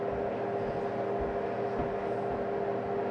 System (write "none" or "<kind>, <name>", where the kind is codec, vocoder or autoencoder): none